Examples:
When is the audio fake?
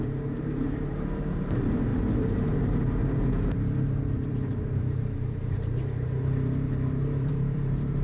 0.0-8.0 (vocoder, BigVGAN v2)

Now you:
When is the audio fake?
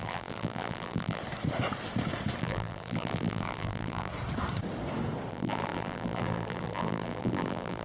0.0-1.2 (vocoder, BigVGAN v2); 2.4-4.1; 5.3-7.8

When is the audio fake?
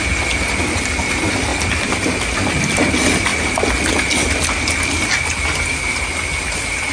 1.5-2.9 (vocoder, BigVGAN v2); 3.3-5.1